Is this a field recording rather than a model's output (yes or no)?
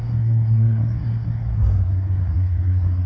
no